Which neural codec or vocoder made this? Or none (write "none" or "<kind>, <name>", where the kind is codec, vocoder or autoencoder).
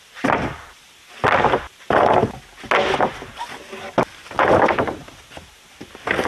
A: none